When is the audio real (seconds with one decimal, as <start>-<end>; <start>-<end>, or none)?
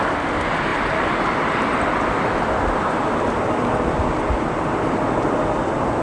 0.0-6.0